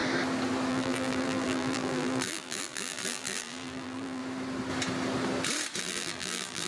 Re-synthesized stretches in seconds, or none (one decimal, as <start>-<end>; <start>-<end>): 0.7-4.2; 5.8-6.7